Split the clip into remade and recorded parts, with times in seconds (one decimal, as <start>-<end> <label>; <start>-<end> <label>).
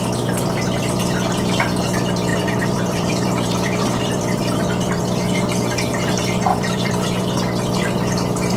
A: 0.0-2.3 recorded; 2.3-5.0 remade; 5.0-6.5 recorded; 6.5-7.2 remade; 7.2-8.6 recorded